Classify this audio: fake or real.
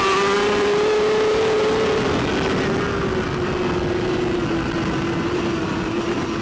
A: real